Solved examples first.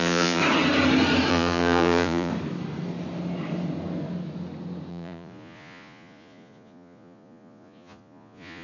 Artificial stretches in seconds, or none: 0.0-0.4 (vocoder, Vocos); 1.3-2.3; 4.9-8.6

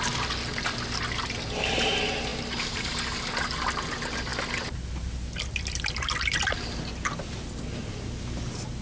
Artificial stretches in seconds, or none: 2.3-2.9 (vocoder, BigVGAN v2)

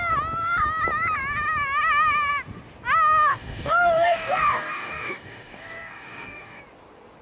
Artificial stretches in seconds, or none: 3.3-6.6 (codec, DAC)